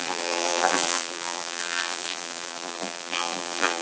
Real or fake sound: fake